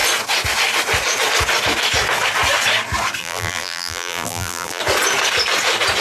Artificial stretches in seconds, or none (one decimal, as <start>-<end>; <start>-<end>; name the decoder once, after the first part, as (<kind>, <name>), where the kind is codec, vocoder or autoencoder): 3.2-4.8 (vocoder, BigVGAN v2)